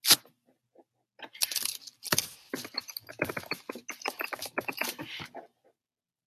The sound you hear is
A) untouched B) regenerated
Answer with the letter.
A